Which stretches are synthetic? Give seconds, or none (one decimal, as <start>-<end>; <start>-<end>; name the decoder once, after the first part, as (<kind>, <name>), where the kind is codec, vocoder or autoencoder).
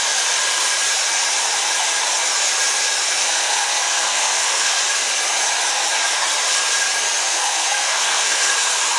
3.2-4.8 (codec, SNAC); 7.2-8.5